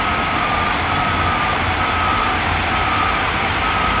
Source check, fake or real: real